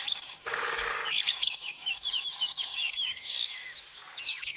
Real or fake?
fake